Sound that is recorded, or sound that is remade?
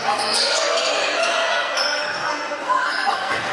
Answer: remade